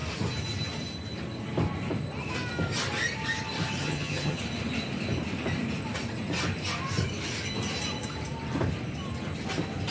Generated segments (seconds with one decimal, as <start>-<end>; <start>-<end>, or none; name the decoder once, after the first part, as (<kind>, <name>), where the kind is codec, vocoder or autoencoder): 3.8-4.4 (vocoder, HiFi-GAN)